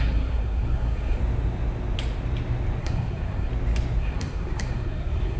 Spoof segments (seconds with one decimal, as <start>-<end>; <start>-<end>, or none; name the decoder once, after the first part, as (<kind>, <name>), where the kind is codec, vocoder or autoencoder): 0.0-1.2 (codec, SNAC); 2.8-3.5; 4.0-5.4